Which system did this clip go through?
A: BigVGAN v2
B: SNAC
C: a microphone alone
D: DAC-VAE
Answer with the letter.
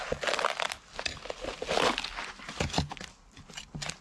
C